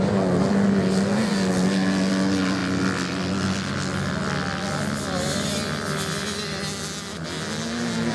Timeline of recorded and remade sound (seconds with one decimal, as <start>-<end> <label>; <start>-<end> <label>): 0.0-8.1 recorded